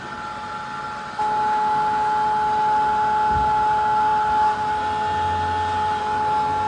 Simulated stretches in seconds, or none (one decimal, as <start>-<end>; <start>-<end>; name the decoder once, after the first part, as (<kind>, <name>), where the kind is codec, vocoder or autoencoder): none